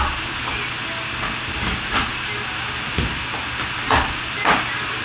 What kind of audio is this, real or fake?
real